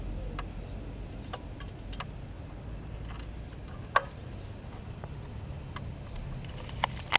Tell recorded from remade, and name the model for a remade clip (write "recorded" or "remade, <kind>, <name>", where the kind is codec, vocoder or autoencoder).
recorded